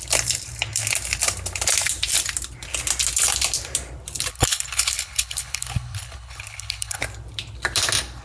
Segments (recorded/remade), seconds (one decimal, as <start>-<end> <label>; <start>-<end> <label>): 0.0-4.3 recorded; 4.3-7.0 remade; 7.0-8.2 recorded